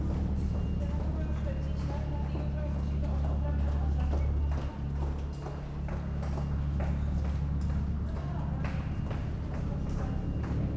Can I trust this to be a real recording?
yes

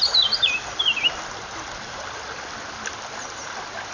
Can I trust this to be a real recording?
yes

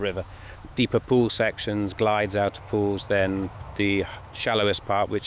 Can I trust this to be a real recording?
no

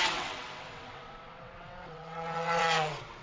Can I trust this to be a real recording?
no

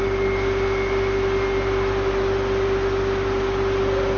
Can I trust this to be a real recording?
yes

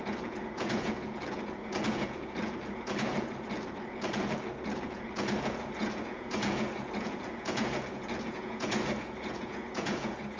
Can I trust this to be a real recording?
no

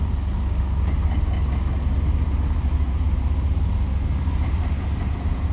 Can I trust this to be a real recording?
yes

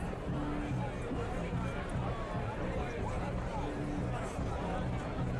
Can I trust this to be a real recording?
yes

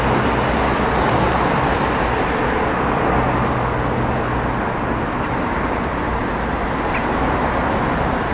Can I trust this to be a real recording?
yes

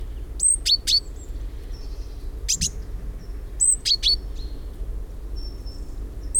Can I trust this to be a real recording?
yes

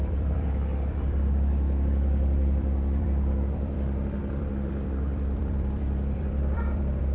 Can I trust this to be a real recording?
no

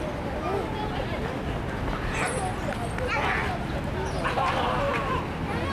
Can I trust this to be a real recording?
yes